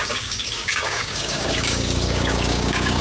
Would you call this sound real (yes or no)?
no